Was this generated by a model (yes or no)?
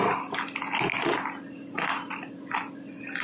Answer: no